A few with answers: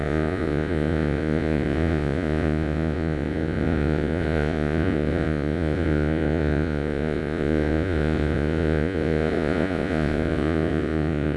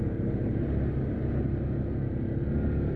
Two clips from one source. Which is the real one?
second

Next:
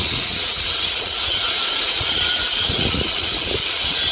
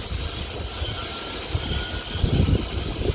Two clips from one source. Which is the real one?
second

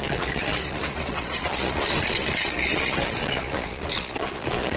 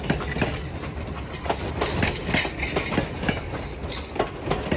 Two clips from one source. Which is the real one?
second